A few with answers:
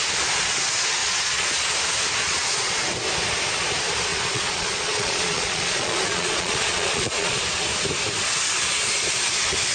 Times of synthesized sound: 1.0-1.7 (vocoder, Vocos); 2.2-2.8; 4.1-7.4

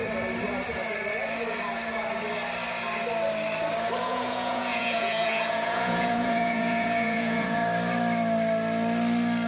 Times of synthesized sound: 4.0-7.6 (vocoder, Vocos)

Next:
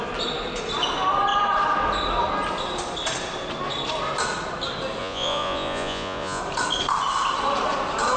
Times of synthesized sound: 5.0-6.4 (vocoder, Vocos)

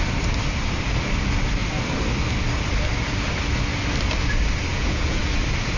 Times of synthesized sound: 4.7-5.2 (vocoder, Vocos)

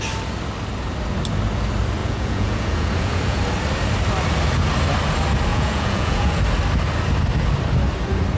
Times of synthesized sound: 2.0-3.4 (vocoder, Vocos); 5.5-6.4